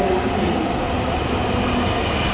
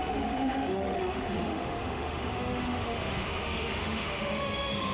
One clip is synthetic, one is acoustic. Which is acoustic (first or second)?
first